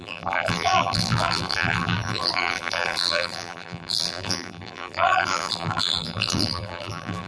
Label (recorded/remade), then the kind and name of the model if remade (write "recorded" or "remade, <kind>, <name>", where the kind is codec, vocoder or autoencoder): remade, vocoder, BigVGAN v2